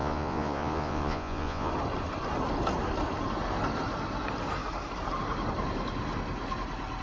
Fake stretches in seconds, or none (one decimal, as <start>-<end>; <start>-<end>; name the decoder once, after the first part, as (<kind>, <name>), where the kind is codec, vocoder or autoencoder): 0.0-1.7 (vocoder, Vocos)